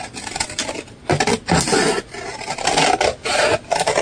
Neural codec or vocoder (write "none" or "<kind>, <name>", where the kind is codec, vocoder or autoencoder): none